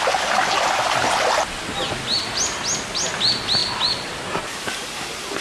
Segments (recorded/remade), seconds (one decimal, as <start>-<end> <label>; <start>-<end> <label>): 0.0-5.4 recorded

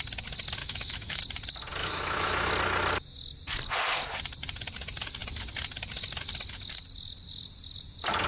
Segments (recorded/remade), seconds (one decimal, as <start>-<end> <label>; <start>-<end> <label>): 0.0-0.6 recorded; 0.6-1.2 remade; 1.2-1.8 recorded; 1.8-2.5 remade; 2.5-8.3 recorded

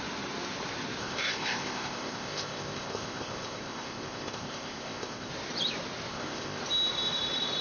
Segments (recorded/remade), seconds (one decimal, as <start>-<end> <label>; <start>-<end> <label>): 0.0-1.0 recorded; 1.0-5.3 remade; 5.3-6.1 recorded; 6.1-6.6 remade; 6.6-7.6 recorded

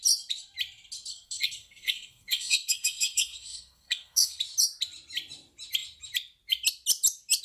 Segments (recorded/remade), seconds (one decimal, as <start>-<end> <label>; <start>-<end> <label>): 0.0-1.1 recorded; 1.1-4.4 remade; 4.4-7.4 recorded

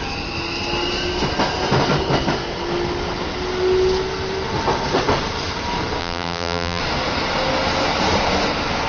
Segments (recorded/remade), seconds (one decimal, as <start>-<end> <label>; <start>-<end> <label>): 0.0-6.0 recorded; 6.0-6.8 remade; 6.8-8.9 recorded

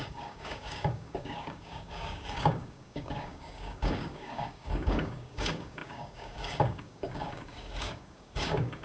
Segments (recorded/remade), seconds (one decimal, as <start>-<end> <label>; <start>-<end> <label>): 0.0-8.8 remade

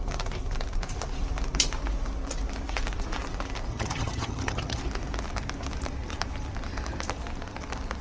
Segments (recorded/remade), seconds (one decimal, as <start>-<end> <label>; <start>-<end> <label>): 0.0-3.7 recorded; 3.7-4.8 remade; 4.8-8.0 recorded

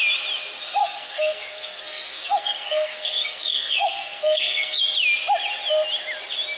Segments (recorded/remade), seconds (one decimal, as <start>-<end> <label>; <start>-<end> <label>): 0.0-0.8 recorded; 0.8-4.8 remade; 4.8-6.6 recorded